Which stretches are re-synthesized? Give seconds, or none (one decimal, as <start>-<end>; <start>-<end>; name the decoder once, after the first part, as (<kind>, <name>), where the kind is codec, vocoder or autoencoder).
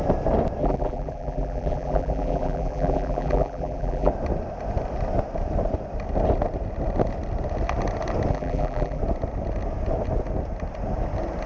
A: 0.6-4.1 (vocoder, BigVGAN v2); 8.3-9.0